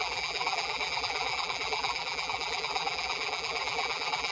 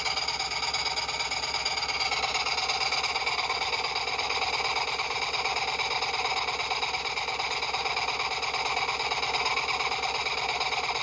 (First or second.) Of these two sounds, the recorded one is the second